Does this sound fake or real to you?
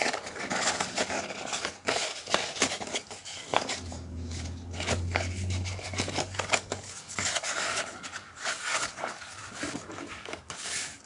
fake